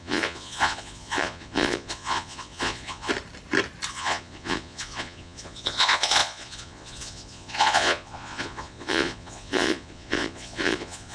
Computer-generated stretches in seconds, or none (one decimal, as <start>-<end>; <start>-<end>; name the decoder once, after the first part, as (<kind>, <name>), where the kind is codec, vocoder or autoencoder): 0.0-3.1 (vocoder, Vocos); 3.9-11.1